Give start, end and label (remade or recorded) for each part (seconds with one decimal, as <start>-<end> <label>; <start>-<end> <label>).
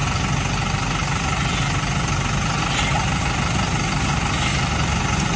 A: 0.0-5.4 recorded